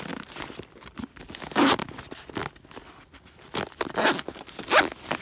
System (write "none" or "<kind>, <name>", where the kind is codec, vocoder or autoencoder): none